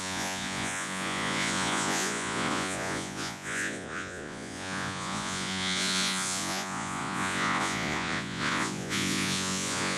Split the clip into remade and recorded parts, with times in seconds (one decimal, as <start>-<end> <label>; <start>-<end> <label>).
0.0-10.0 remade